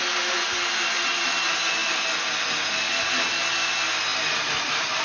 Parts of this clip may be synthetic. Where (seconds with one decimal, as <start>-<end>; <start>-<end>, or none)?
none